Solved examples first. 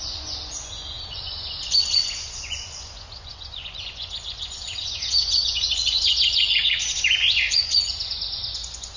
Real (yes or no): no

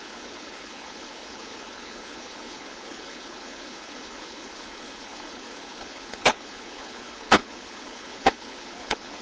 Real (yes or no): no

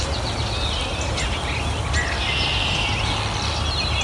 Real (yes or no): yes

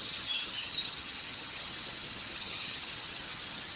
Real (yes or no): no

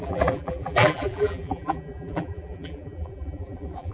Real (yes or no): no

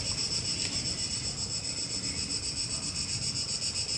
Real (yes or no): yes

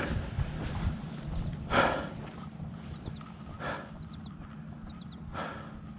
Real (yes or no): yes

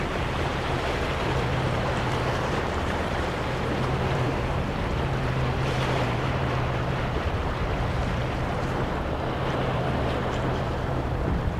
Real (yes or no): no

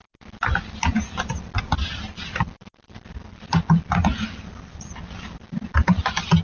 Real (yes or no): yes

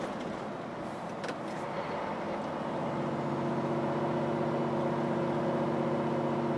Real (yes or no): yes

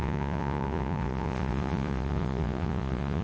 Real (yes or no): no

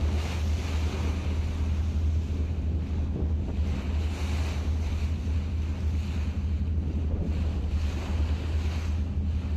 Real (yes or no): yes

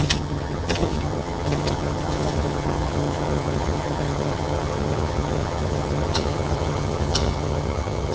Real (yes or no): no